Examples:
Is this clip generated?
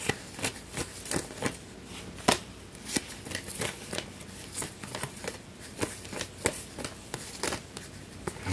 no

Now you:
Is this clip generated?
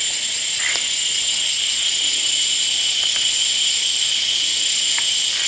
no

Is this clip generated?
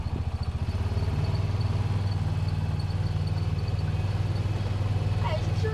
no